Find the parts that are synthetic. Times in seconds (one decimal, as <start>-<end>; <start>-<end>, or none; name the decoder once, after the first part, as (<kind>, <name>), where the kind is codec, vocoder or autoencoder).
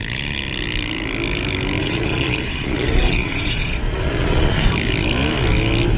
1.8-4.7 (vocoder, Vocos)